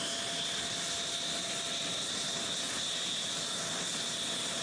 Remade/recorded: recorded